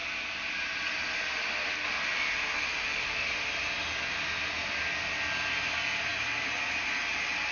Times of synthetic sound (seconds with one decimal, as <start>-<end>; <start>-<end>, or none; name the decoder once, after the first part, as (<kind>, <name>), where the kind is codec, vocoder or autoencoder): none